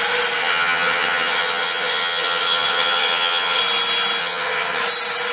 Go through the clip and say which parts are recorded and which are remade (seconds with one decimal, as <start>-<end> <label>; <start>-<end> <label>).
0.0-0.4 recorded; 0.4-3.6 remade; 3.6-4.2 recorded; 4.2-4.8 remade; 4.8-5.3 recorded